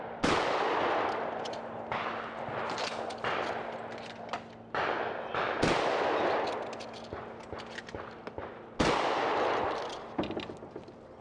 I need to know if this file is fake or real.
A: real